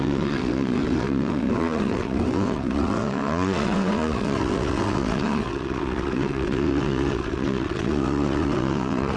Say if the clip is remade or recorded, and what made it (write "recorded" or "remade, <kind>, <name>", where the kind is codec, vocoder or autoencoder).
remade, vocoder, WaveNeXt